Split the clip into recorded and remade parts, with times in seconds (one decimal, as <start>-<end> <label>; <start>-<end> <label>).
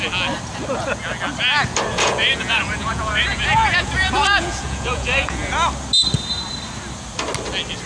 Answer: 0.0-1.9 recorded; 1.9-5.5 remade; 5.5-7.9 recorded